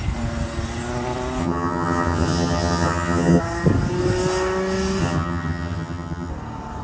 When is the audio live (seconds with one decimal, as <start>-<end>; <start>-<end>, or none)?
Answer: 0.0-1.4; 3.4-5.0; 6.3-6.8